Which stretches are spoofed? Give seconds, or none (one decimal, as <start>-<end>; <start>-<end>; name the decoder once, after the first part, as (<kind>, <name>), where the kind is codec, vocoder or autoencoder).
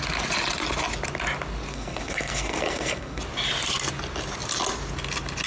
1.7-3.2 (codec, SNAC)